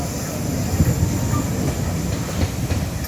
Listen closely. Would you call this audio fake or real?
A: real